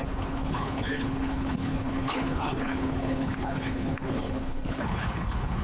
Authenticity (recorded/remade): remade